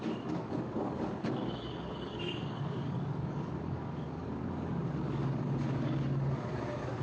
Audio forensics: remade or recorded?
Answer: remade